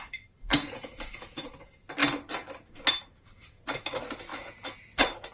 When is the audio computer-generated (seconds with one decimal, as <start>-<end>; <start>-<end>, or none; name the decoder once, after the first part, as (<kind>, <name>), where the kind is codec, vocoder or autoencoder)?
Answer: 0.5-1.5 (vocoder, Vocos); 4.3-4.8